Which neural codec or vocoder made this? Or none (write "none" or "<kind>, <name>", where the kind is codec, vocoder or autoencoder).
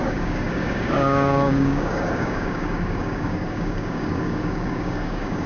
codec, DAC